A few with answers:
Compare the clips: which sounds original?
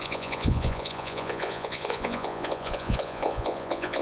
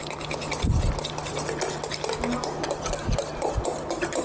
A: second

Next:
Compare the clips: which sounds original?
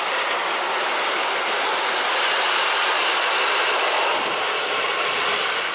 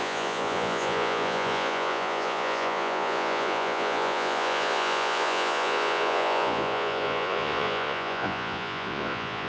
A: first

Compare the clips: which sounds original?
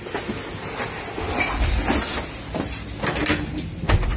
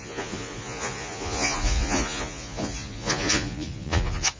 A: first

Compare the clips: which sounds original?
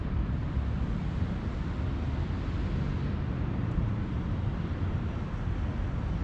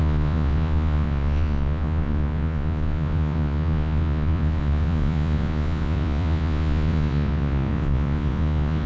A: first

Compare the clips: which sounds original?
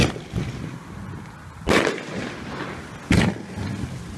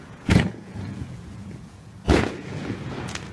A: first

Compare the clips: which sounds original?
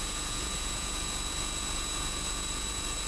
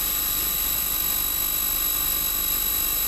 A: second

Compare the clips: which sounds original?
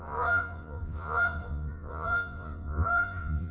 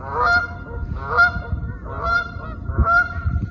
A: second